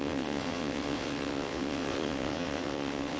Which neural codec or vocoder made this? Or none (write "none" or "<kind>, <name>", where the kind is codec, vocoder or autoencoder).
vocoder, WaveNeXt